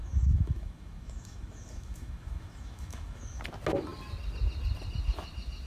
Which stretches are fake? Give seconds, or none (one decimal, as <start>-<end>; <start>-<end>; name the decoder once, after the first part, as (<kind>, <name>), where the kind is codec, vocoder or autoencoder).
0.0-3.4 (autoencoder, DAC-VAE)